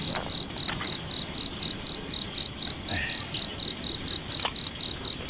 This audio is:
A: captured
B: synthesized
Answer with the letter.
A